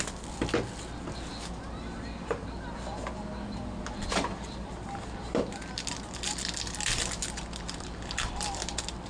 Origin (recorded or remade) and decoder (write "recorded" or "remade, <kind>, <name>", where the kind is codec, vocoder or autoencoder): recorded